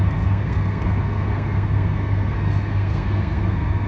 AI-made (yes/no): yes